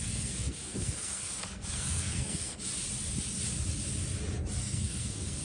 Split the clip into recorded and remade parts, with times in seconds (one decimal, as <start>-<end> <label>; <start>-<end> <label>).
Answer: 0.0-2.7 remade; 2.7-4.6 recorded; 4.6-5.4 remade

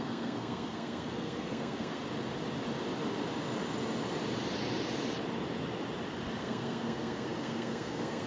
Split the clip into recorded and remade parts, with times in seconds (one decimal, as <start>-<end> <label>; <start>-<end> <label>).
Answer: 0.0-2.0 remade; 2.0-6.4 recorded; 6.4-8.3 remade

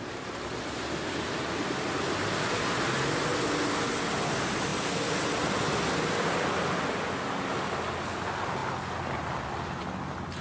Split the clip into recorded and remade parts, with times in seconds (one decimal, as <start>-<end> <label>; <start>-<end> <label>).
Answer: 0.0-10.4 recorded

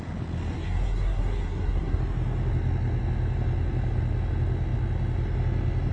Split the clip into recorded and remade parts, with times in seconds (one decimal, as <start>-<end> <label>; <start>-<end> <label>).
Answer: 0.0-0.5 recorded; 0.5-2.0 remade; 2.0-5.9 recorded

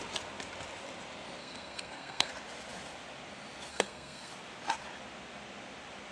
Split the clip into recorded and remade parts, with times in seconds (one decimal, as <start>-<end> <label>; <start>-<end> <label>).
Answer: 0.0-1.4 recorded; 1.4-2.3 remade; 2.3-3.7 recorded; 3.7-4.3 remade; 4.3-6.1 recorded